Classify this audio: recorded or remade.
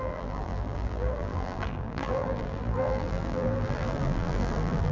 remade